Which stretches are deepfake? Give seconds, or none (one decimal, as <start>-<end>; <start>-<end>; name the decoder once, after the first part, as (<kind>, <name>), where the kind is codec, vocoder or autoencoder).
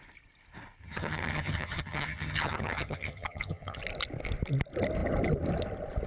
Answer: 0.8-3.8 (vocoder, HiFi-GAN)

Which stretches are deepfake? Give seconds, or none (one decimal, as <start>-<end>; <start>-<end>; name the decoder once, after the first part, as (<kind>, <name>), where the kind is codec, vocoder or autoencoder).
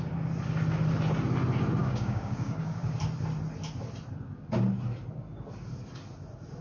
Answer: 1.8-2.9 (codec, DAC)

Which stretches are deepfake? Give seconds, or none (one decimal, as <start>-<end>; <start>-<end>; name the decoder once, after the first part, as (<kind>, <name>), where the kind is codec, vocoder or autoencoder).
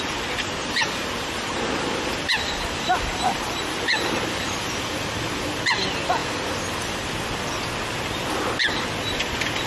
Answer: 0.6-5.8 (vocoder, BigVGAN v2); 6.2-7.1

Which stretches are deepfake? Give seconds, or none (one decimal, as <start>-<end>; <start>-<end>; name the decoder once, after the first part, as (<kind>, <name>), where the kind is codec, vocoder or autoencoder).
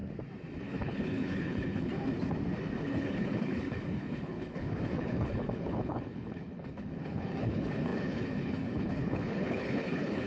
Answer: 0.6-1.9 (codec, HILCodec); 2.8-10.3